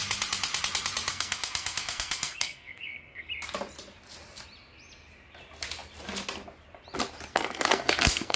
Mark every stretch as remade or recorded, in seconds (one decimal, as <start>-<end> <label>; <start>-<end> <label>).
0.0-1.1 recorded; 1.1-3.3 remade; 3.3-7.3 recorded; 7.3-8.4 remade